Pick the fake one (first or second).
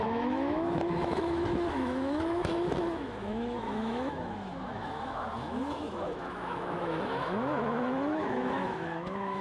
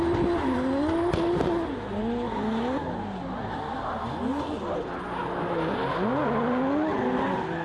first